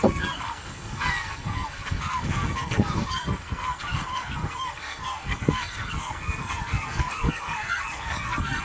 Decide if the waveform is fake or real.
fake